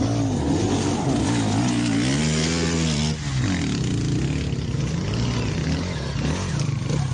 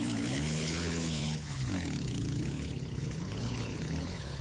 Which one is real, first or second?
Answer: first